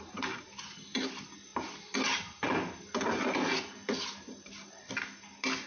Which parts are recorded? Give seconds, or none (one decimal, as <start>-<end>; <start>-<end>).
0.0-5.7